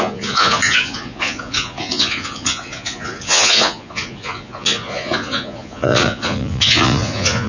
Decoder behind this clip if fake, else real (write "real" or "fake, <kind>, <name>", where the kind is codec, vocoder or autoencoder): fake, vocoder, Vocos